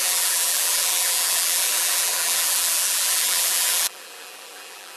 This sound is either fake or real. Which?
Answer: fake